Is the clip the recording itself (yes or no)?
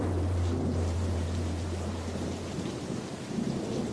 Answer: no